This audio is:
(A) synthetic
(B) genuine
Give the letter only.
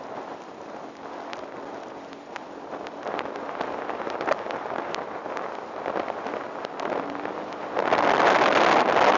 B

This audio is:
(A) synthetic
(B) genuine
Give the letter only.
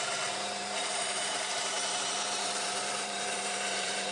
A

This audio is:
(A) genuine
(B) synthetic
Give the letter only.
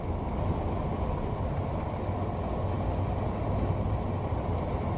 A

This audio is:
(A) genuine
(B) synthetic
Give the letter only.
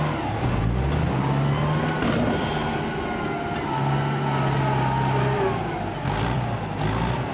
A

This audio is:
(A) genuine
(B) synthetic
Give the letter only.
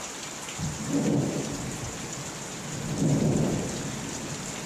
A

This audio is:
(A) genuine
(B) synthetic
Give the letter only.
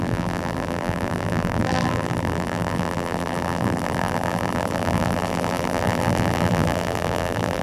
B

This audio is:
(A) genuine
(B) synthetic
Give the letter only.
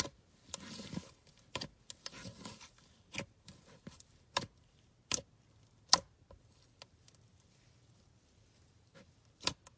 A